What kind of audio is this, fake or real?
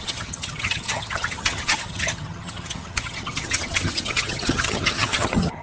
fake